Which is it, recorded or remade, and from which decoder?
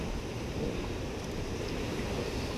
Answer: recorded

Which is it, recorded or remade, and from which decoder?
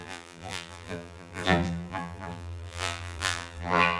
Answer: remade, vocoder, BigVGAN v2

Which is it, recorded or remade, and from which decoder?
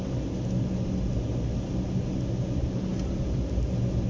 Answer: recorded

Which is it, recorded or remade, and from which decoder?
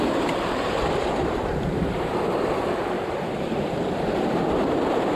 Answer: remade, vocoder, BigVGAN v2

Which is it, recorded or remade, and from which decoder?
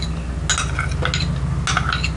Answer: recorded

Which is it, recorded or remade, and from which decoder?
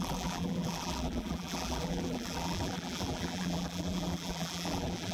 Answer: remade, vocoder, BigVGAN v2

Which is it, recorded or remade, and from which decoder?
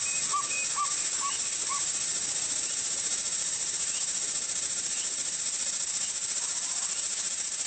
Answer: remade, vocoder, BigVGAN v2